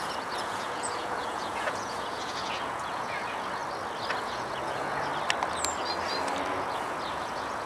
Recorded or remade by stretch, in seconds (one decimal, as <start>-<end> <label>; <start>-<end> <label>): 0.0-3.6 remade; 3.6-4.2 recorded; 4.2-5.1 remade; 5.1-6.5 recorded; 6.5-7.7 remade